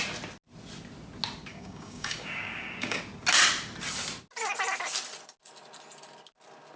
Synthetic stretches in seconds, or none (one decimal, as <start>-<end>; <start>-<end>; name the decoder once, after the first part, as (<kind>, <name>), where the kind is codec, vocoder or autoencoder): 1.5-3.0 (codec, DAC)